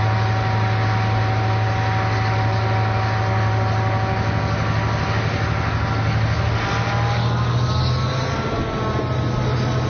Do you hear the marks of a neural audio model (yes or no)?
no